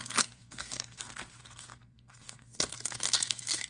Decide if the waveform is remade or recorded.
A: remade